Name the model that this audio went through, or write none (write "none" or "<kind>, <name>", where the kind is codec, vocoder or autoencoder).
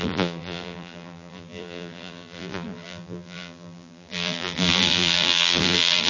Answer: vocoder, BigVGAN v2